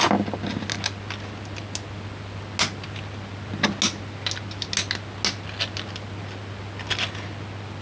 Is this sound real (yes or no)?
yes